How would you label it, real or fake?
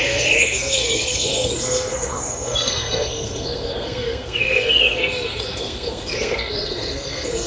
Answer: fake